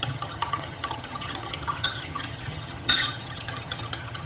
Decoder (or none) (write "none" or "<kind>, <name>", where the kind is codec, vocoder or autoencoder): vocoder, HiFi-GAN